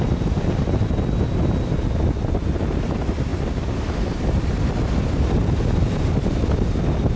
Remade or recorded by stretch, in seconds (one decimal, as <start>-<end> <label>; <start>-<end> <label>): 0.0-7.2 recorded